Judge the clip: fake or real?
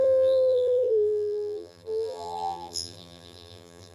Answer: fake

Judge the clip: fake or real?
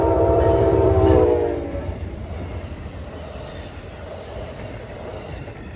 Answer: fake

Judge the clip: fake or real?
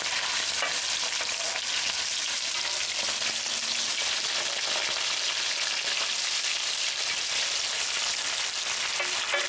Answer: real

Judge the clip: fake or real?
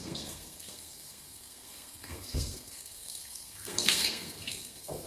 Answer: fake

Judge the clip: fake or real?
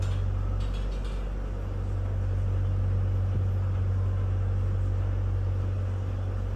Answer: real